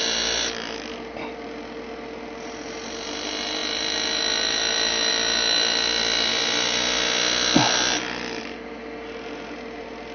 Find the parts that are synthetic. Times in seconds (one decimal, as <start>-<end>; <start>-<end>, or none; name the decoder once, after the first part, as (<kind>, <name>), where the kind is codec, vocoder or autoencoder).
none